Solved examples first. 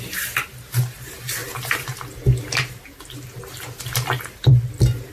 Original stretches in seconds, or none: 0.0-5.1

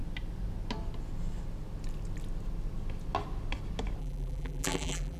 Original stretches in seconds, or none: 0.0-4.0

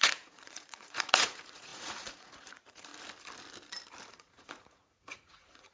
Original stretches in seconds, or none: 2.9-4.1

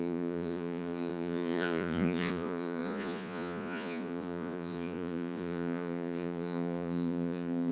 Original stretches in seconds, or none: none

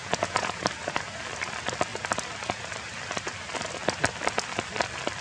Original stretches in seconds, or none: 0.6-5.2

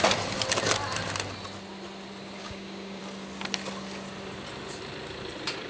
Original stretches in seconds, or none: 0.0-2.4; 3.0-5.7

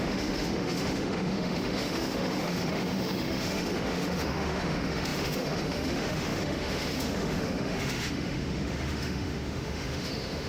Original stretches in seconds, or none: none